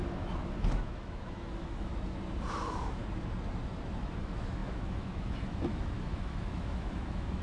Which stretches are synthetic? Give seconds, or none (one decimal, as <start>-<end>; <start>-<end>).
0.0-1.9; 2.5-3.0; 4.0-7.4

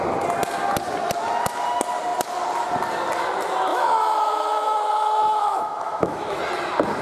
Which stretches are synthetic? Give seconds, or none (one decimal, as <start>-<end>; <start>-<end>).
3.7-6.4

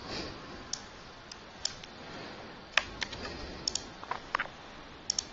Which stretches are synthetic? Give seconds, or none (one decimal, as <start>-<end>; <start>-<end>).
none

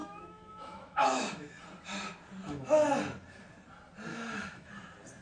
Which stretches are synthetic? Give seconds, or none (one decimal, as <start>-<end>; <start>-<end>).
0.0-1.6; 2.4-2.9; 4.1-4.7

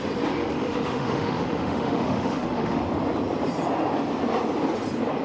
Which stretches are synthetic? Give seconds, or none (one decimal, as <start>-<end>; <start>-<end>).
0.4-2.8

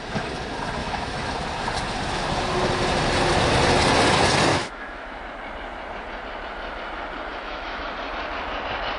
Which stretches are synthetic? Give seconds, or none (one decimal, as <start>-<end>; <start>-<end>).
0.8-1.3; 4.5-5.2; 7.3-7.8

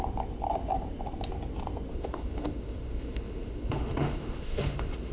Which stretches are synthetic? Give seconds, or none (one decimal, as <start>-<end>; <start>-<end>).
1.9-5.1